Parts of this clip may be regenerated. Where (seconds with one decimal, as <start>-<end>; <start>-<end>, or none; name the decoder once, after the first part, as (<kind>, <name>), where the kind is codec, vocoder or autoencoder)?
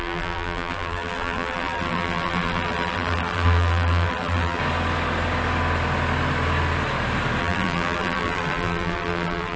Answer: 0.0-4.6 (vocoder, BigVGAN v2); 7.4-9.6